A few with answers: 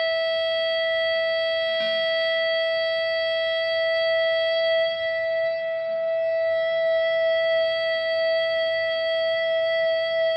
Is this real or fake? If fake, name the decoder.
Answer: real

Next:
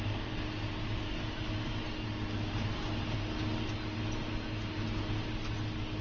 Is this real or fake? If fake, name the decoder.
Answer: real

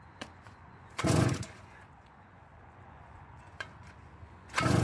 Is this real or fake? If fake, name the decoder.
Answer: fake, vocoder, Vocos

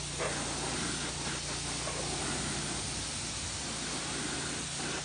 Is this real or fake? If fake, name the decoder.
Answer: real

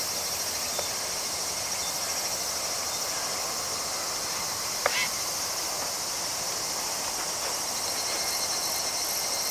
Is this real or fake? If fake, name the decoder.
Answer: real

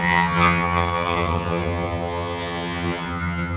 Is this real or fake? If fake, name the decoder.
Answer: fake, vocoder, HiFi-GAN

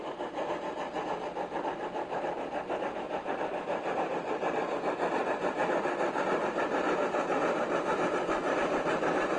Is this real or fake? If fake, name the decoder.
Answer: fake, vocoder, BigVGAN v2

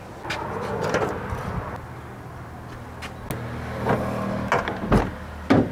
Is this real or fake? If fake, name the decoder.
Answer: real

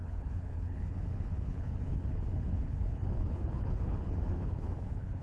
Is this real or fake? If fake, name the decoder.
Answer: fake, codec, HILCodec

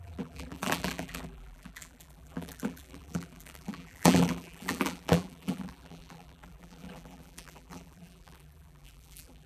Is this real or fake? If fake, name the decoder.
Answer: fake, vocoder, BigVGAN v2